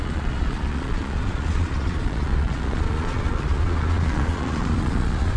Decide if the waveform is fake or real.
fake